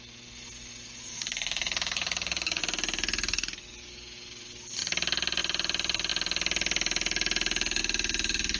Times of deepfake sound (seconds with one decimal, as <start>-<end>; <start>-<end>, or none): 1.1-2.6